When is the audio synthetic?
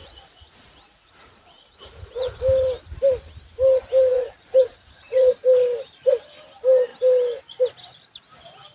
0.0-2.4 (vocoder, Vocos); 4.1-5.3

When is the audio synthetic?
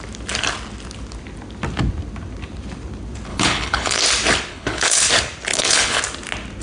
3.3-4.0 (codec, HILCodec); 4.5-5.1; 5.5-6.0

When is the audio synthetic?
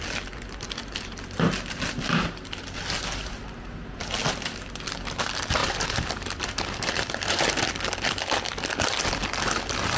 5.6-7.7 (vocoder, BigVGAN v2)